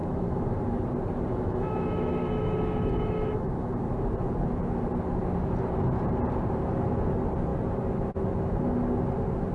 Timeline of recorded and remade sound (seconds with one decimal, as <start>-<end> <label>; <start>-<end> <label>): 0.0-0.6 remade; 0.6-1.3 recorded; 1.3-3.8 remade; 3.8-9.5 recorded